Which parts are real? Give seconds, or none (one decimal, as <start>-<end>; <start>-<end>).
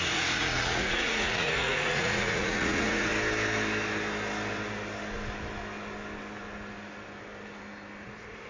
3.1-8.0